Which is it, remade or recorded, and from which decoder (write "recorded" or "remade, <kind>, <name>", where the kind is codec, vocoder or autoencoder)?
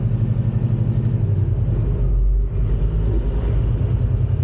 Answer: recorded